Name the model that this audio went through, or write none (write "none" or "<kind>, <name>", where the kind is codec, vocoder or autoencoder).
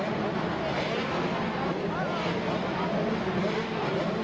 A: none